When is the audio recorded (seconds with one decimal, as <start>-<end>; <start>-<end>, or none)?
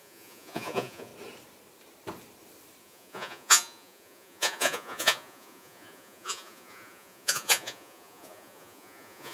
1.1-2.8